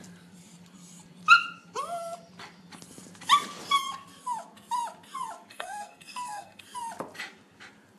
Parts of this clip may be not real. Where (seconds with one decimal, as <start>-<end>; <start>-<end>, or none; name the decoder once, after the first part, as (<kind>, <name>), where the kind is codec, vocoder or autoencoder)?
5.5-6.6 (codec, SNAC)